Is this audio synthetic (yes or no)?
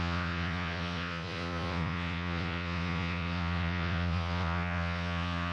yes